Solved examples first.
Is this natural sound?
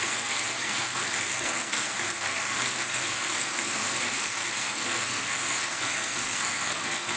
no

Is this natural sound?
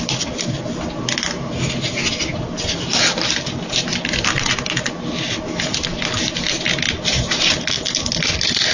yes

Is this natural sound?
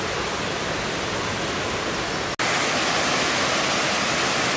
yes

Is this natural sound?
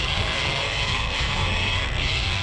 no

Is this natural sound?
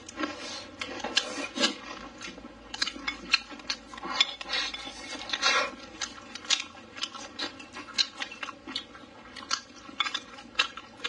yes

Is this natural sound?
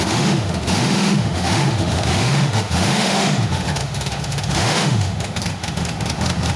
no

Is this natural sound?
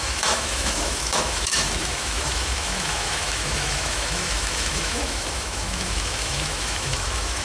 no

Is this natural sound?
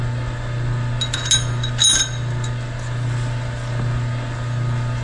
yes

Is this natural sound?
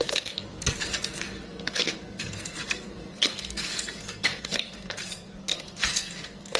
no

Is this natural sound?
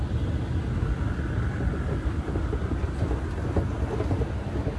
yes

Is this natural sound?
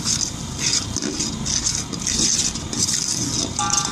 yes